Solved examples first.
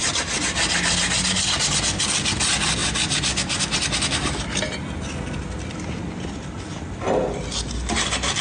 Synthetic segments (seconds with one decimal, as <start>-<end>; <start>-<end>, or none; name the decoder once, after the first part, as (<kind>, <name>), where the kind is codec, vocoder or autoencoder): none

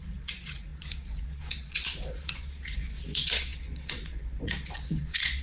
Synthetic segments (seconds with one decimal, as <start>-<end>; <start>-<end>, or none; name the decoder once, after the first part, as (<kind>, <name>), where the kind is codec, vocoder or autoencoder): 0.0-5.4 (vocoder, Vocos)

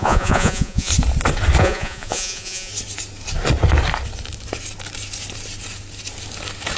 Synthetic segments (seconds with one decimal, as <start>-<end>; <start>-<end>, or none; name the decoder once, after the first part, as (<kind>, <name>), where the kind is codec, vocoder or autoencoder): 0.0-0.9 (vocoder, Vocos); 1.6-2.7

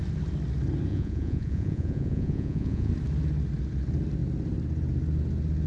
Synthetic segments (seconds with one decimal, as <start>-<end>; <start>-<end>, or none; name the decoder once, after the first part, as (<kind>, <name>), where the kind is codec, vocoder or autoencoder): 0.9-2.9 (vocoder, Vocos)

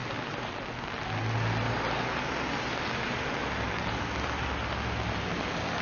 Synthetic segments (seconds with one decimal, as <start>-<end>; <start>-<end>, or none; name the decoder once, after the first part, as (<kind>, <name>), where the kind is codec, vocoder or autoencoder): none